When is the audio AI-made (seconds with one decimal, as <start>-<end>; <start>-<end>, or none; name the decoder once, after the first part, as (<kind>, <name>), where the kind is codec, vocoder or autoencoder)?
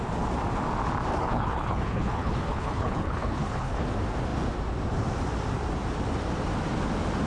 1.1-3.9 (codec, HILCodec)